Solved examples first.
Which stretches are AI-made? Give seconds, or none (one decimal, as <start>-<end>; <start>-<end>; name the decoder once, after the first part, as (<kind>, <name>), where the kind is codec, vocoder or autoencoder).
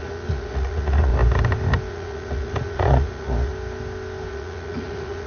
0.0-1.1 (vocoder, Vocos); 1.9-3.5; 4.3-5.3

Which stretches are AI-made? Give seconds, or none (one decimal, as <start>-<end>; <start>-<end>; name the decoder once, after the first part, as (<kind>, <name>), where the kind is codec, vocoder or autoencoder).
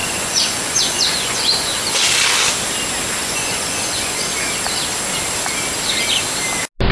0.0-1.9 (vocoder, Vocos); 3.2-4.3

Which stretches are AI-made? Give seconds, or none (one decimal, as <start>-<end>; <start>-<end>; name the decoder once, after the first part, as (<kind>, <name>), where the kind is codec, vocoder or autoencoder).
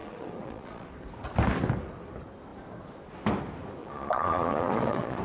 0.0-0.9 (vocoder, Vocos); 3.8-5.2